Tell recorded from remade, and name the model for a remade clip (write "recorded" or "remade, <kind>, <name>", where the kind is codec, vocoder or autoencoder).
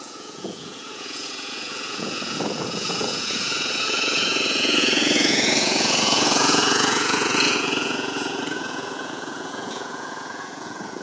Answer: remade, vocoder, Vocos